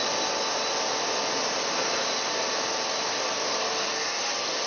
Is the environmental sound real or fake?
real